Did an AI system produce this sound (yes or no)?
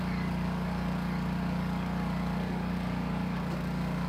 yes